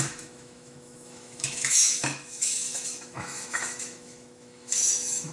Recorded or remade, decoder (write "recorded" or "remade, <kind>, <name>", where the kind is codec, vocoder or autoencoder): remade, autoencoder, DAC-VAE